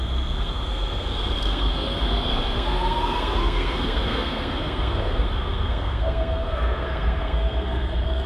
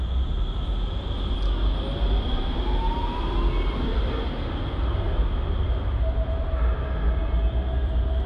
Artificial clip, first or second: first